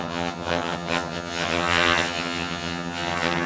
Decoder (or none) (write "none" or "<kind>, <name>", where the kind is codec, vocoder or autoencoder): vocoder, HiFi-GAN